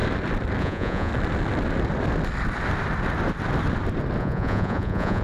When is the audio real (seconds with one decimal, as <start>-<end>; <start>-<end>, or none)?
0.0-0.6; 1.1-4.2